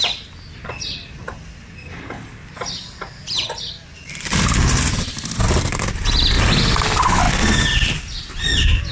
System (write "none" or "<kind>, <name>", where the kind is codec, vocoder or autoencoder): none